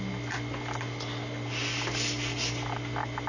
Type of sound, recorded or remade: recorded